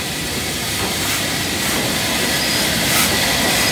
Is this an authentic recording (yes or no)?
yes